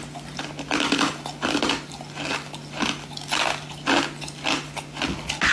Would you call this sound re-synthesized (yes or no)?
no